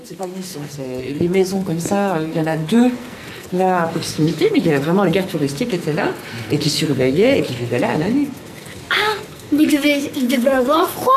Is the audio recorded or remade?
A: remade